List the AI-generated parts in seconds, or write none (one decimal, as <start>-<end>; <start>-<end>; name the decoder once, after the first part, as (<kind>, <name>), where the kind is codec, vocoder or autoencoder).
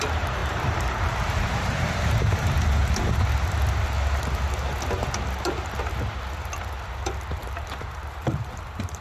0.4-2.7 (vocoder, BigVGAN v2); 7.4-9.0